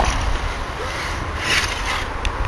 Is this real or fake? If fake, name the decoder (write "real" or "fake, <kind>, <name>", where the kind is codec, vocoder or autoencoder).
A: real